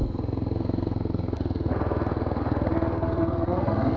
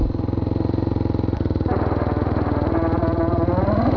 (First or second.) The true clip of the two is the second